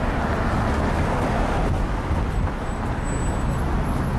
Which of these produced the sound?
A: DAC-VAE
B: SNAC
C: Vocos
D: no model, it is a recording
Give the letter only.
D